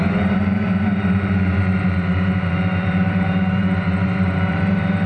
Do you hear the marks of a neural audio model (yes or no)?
yes